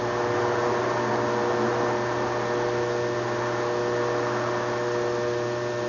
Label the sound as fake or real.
fake